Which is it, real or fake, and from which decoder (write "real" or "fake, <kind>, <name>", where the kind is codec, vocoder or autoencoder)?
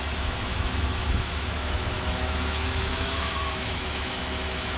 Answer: fake, autoencoder, DAC-VAE